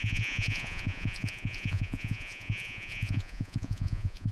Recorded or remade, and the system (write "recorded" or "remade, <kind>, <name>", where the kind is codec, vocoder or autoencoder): remade, vocoder, Vocos